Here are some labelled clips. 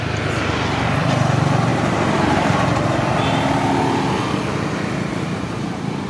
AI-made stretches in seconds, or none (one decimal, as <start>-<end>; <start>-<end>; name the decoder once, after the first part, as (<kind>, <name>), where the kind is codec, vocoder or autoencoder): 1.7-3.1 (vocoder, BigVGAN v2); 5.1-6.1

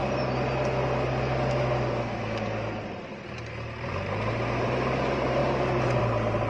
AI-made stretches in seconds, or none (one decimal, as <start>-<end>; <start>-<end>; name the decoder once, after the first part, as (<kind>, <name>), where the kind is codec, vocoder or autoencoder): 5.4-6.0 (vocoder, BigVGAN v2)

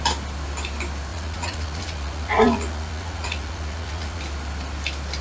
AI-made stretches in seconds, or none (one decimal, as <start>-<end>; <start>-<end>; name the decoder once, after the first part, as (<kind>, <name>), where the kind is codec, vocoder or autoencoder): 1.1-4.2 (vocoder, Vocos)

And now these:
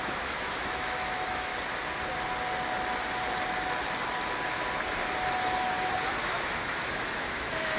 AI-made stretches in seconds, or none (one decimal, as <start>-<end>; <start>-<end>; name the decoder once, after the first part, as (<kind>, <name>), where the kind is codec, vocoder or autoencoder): 0.0-1.5 (autoencoder, DAC-VAE); 6.1-7.8